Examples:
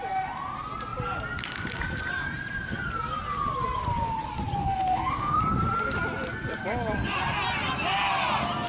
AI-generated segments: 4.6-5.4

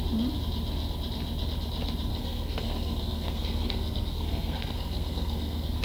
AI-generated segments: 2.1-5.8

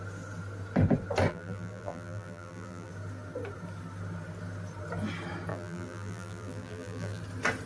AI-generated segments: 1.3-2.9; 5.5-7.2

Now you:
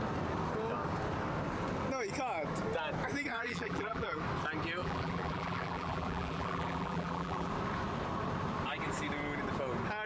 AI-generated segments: 3.3-4.2; 4.8-7.5

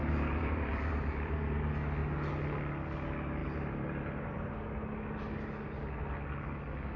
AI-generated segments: 0.0-1.6; 3.4-4.5

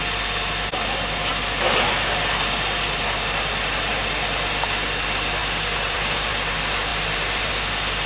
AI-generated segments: 5.4-6.5; 6.9-7.5